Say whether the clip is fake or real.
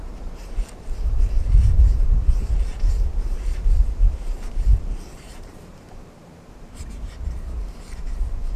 fake